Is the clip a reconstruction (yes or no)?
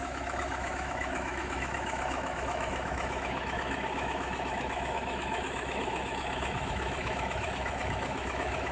yes